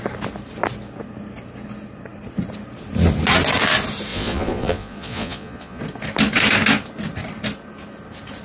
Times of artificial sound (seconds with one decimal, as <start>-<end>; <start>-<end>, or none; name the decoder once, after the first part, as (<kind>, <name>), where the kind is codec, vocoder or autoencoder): 4.1-5.8 (vocoder, Vocos)